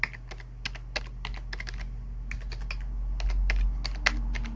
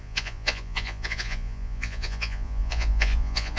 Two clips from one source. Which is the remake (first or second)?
second